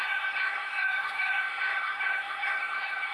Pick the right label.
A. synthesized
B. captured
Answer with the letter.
A